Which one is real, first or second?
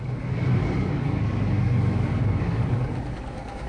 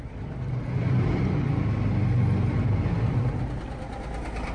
second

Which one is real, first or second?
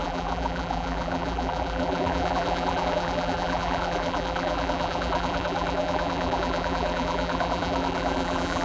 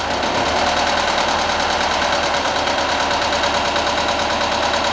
second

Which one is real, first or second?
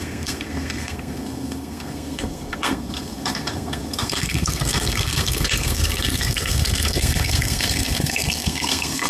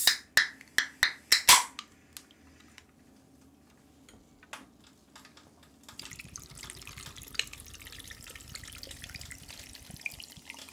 second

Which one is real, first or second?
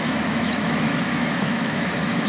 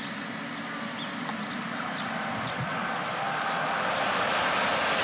second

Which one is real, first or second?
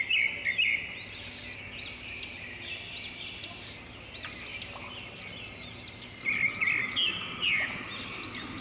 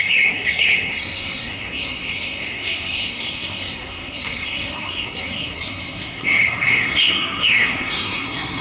first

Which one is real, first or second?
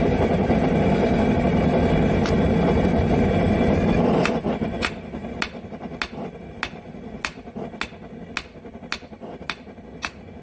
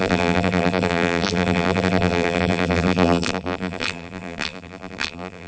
first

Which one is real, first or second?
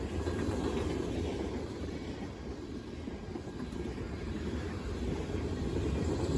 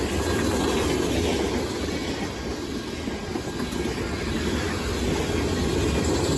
second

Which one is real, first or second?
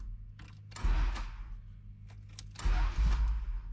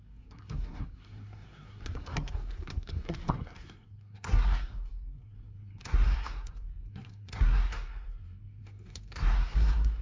first